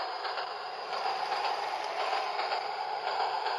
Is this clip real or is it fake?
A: fake